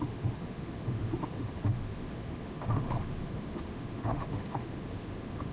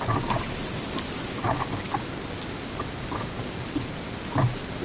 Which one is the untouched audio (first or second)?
second